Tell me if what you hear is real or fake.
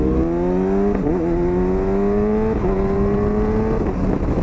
real